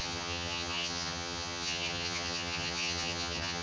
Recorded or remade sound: remade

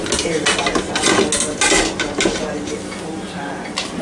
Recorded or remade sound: recorded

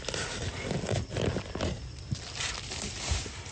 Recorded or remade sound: recorded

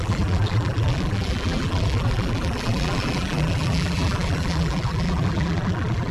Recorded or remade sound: remade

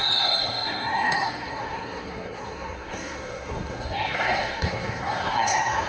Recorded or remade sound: remade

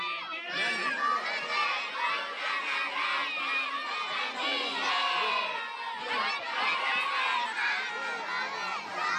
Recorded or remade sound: recorded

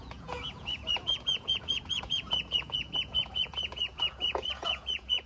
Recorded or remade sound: remade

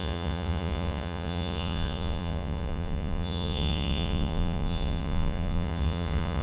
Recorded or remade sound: remade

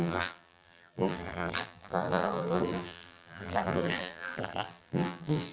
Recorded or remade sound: remade